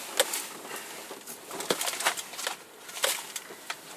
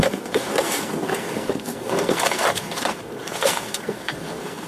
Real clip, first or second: first